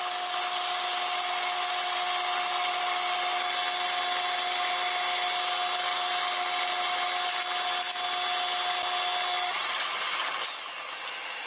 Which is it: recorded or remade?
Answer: recorded